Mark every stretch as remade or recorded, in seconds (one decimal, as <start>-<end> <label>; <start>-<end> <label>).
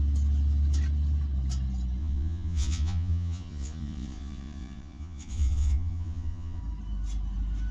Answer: 0.0-2.0 recorded; 2.0-6.6 remade; 6.6-7.7 recorded